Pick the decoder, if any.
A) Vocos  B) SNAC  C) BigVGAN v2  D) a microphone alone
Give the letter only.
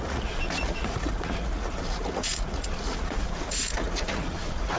A